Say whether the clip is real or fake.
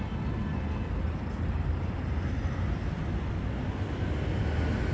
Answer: real